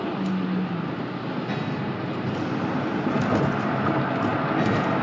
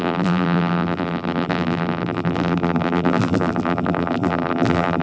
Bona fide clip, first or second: first